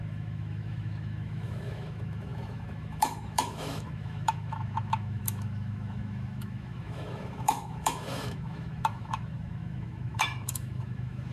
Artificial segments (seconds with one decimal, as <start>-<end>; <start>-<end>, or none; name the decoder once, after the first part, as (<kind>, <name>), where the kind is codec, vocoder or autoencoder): 0.0-11.3 (autoencoder, DAC-VAE)